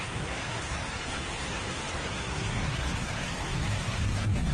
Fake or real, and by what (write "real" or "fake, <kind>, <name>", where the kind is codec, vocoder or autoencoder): fake, codec, SNAC